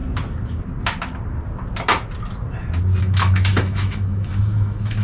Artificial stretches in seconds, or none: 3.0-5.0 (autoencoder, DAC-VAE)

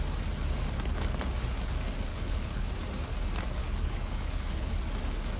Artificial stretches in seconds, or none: 2.1-2.7 (codec, HILCodec); 3.6-4.7

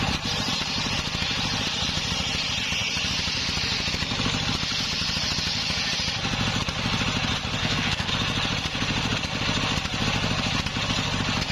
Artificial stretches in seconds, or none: 7.6-8.1 (codec, SNAC)

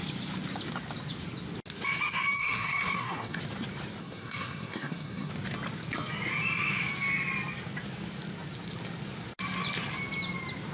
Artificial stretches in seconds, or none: 2.4-3.4 (codec, SNAC); 4.0-5.3

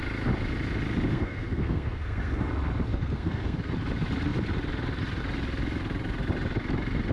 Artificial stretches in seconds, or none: 1.1-2.5 (codec, SNAC); 2.9-3.7

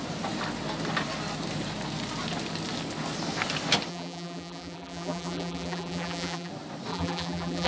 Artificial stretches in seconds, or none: 3.9-6.5 (vocoder, BigVGAN v2); 6.9-7.7